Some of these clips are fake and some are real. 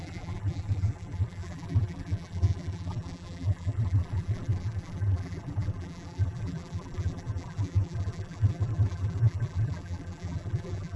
fake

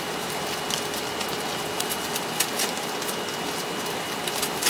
real